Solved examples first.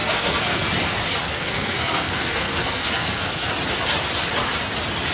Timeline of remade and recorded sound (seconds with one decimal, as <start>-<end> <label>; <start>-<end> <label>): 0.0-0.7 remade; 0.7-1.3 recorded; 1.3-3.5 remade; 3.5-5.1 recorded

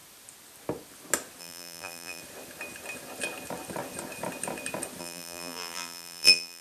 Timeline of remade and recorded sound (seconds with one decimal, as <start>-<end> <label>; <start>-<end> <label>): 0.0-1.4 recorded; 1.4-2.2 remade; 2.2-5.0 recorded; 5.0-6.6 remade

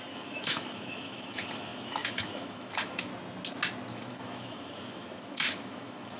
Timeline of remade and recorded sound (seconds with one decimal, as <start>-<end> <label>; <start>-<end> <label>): 0.0-3.1 remade; 3.1-3.9 recorded; 3.9-6.2 remade